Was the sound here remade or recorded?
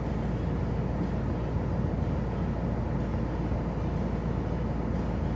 recorded